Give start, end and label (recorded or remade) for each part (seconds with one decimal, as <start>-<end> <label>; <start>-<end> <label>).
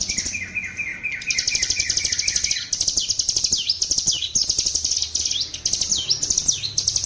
0.0-7.1 recorded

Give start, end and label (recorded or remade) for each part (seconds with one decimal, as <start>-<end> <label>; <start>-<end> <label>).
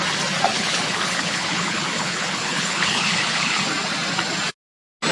0.0-0.5 recorded; 0.5-3.6 remade; 3.6-5.1 recorded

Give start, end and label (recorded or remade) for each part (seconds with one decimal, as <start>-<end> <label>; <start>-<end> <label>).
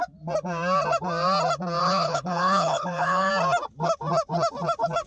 0.0-1.8 recorded; 1.8-3.3 remade; 3.3-5.1 recorded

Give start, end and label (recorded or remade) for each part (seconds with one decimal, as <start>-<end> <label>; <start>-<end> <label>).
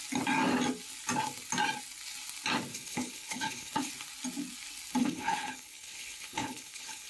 0.0-2.7 recorded; 2.7-3.9 remade; 3.9-5.0 recorded; 5.0-7.1 remade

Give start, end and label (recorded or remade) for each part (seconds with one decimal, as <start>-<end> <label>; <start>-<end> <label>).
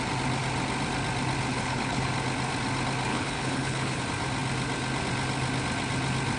0.0-1.5 recorded; 1.5-2.1 remade; 2.1-3.1 recorded; 3.1-4.0 remade; 4.0-6.4 recorded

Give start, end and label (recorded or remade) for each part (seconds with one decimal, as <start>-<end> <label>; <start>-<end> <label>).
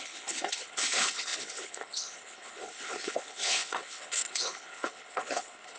0.0-5.8 remade